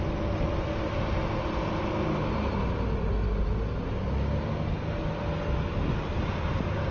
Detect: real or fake real